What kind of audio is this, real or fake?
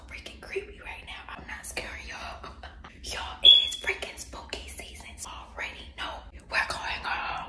real